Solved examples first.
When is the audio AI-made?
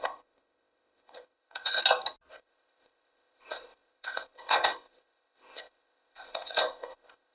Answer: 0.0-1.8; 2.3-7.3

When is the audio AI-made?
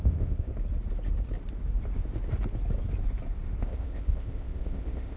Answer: 0.0-0.5; 3.6-5.2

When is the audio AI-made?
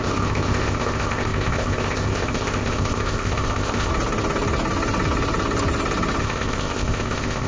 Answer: 0.0-3.9; 6.2-7.5